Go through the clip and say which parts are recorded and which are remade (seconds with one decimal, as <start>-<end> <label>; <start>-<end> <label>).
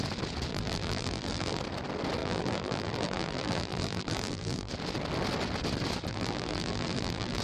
0.0-0.5 recorded; 0.5-1.6 remade; 1.6-2.2 recorded; 2.2-4.7 remade; 4.7-6.1 recorded; 6.1-7.4 remade